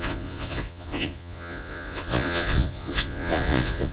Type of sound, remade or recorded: remade